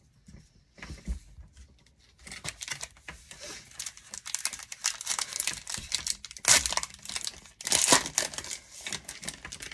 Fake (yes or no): no